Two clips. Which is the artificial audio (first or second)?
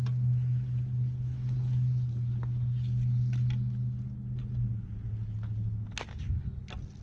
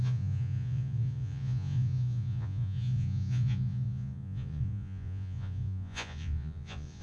second